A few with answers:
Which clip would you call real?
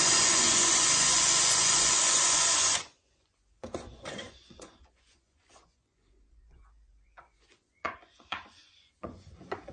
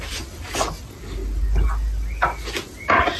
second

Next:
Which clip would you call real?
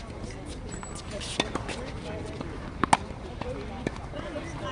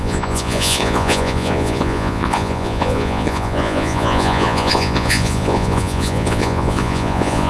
first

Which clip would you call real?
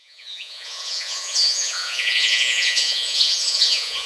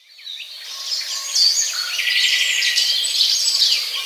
second